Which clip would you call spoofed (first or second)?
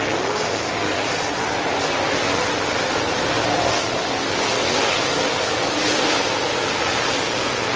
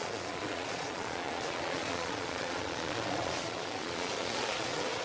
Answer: second